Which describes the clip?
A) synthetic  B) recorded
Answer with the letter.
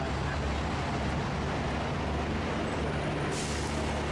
B